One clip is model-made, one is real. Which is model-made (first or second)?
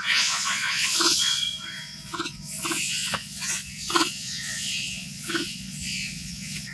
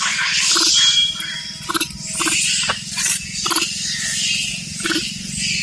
first